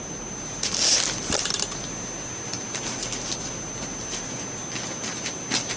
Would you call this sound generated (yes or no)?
no